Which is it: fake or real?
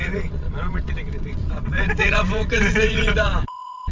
fake